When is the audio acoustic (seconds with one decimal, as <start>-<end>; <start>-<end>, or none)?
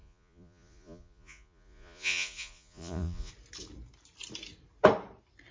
3.3-5.5